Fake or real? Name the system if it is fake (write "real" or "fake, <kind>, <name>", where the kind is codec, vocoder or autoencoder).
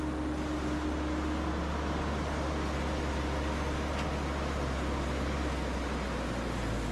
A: real